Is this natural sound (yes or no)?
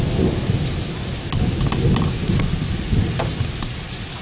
yes